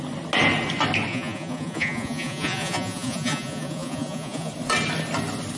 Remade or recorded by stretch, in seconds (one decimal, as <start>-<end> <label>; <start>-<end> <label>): 0.0-1.1 recorded; 1.1-4.5 remade; 4.5-5.6 recorded